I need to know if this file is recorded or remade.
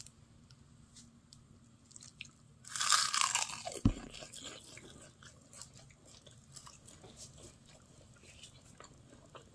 recorded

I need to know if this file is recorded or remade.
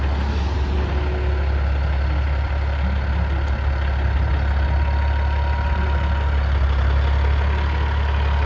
recorded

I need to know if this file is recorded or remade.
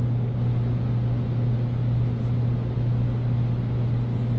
recorded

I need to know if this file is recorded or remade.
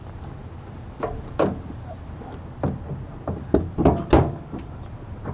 recorded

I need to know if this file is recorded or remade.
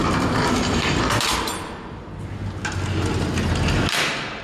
recorded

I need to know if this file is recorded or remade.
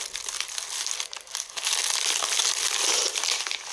recorded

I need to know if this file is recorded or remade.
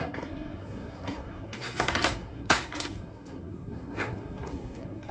remade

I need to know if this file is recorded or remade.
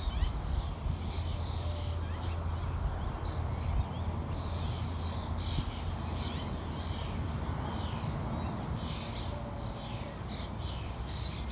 recorded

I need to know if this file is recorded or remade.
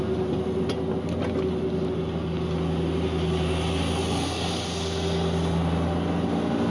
recorded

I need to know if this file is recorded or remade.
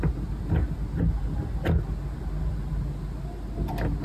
recorded